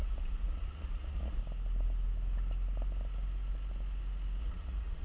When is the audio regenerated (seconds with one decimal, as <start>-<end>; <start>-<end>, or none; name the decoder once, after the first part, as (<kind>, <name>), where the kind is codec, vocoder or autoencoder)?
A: 0.0-1.4 (vocoder, Vocos); 4.4-5.0